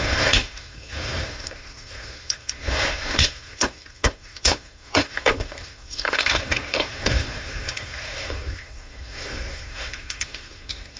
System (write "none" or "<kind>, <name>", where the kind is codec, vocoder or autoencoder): codec, SNAC